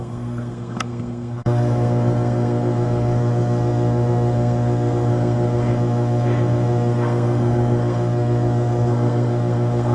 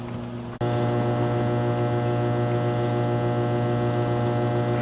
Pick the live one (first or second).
second